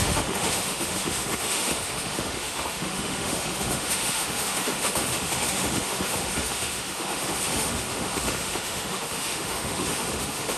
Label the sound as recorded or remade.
remade